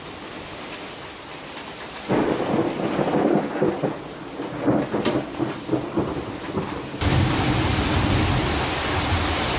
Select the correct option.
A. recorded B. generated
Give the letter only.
A